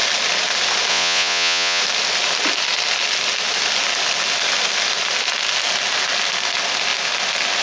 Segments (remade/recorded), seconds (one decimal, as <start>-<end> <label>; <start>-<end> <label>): 0.0-0.9 recorded; 0.9-1.8 remade; 1.8-7.6 recorded